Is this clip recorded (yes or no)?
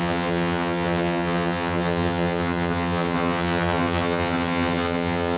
no